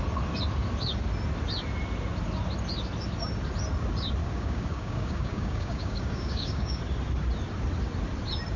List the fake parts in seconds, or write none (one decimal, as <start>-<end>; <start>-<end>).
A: 4.2-6.8